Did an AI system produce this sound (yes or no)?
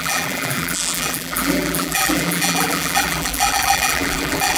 yes